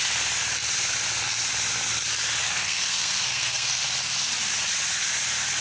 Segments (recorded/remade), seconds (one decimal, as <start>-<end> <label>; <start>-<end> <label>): 0.0-2.4 recorded; 2.4-3.8 remade; 3.8-5.6 recorded